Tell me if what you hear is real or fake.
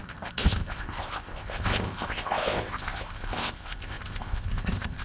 fake